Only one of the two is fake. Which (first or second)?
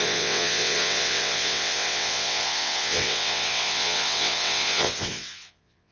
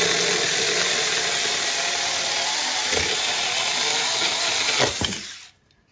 first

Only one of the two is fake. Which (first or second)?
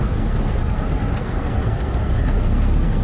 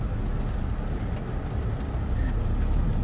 first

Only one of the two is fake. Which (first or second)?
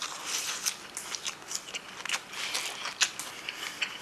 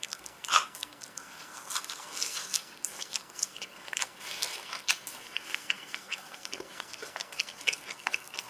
second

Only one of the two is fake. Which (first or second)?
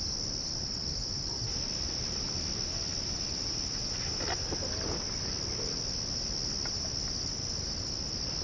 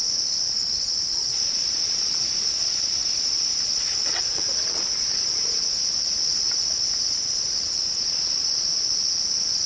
second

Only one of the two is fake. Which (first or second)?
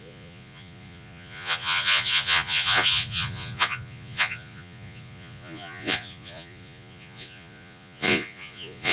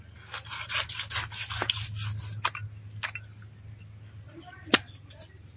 first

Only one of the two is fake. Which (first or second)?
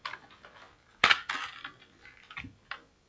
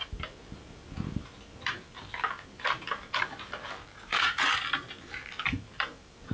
second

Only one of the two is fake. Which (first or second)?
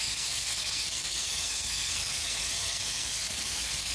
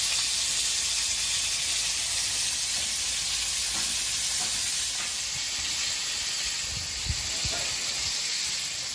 first